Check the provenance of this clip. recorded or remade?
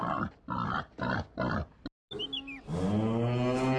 recorded